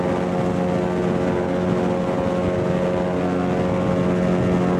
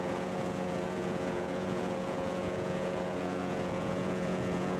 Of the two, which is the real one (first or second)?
first